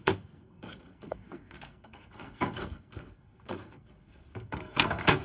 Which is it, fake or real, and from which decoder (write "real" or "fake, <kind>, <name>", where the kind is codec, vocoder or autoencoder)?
fake, codec, SNAC